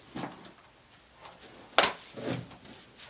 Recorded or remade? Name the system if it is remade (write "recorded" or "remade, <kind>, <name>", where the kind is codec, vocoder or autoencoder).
recorded